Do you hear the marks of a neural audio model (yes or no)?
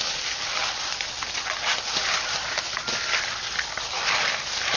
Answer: no